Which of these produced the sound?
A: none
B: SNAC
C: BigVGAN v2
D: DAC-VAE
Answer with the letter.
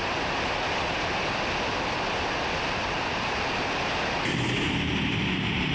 A